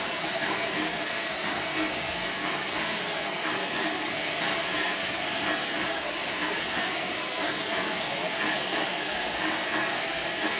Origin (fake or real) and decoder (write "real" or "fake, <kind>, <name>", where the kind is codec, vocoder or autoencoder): fake, codec, SNAC